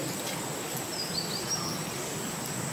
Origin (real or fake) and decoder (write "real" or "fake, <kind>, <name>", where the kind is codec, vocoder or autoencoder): real